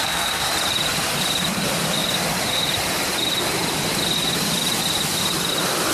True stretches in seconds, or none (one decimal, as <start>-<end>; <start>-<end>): 0.5-5.9